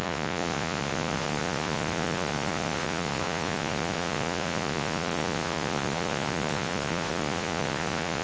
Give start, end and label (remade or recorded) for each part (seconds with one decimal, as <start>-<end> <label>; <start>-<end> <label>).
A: 0.0-8.2 remade